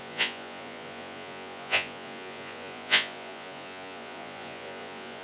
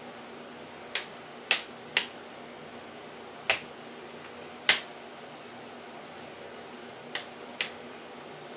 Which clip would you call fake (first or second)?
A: first